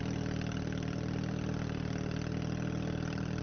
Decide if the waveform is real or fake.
real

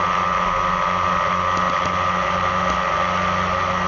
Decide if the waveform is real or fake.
real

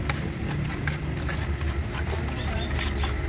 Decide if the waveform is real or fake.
real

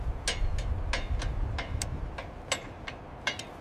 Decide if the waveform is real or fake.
real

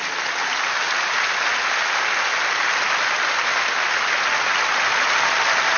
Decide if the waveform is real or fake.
real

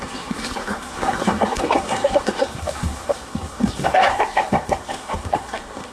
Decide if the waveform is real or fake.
fake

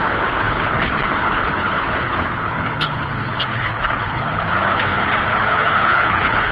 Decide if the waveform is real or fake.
fake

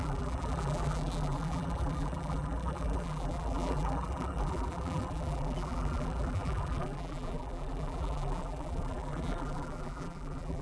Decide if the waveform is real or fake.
fake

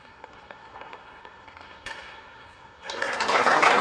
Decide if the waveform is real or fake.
fake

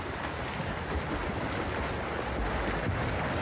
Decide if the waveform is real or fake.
real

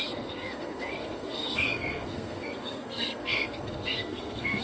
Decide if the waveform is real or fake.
fake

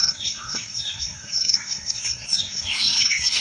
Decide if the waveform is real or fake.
fake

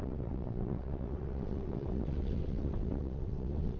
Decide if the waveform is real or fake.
fake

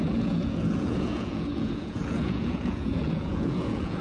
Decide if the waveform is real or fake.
fake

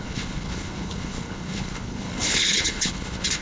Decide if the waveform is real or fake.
fake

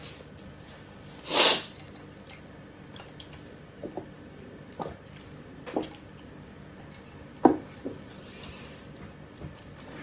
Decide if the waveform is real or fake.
real